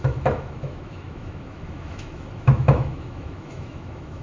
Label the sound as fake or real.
fake